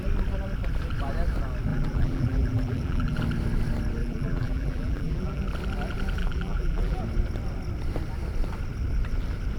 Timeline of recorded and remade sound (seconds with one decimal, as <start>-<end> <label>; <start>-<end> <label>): 0.0-1.7 recorded; 1.7-3.2 remade; 3.2-4.0 recorded; 4.0-5.4 remade; 5.4-6.2 recorded; 6.2-7.0 remade; 7.0-9.6 recorded